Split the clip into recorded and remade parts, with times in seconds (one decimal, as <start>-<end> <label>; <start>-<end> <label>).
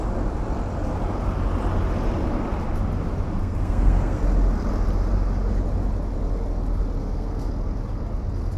0.0-3.4 recorded; 3.4-4.2 remade; 4.2-7.0 recorded; 7.0-7.5 remade; 7.5-8.6 recorded